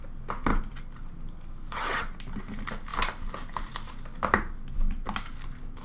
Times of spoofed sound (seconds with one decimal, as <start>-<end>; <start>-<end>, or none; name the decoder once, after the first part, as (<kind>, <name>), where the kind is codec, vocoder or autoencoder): none